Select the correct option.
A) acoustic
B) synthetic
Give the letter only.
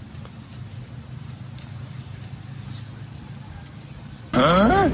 A